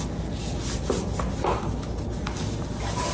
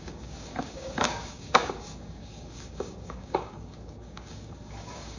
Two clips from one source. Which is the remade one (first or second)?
second